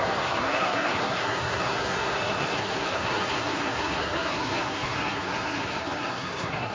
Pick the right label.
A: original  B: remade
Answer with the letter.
B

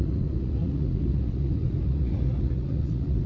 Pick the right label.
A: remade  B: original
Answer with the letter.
A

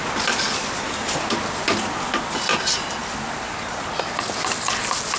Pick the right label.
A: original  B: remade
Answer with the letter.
A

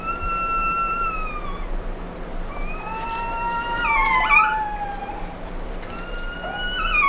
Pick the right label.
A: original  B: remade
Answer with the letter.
A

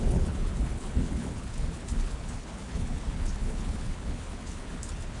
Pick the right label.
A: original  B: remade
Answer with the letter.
B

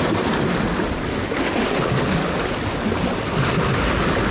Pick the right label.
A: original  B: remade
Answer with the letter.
A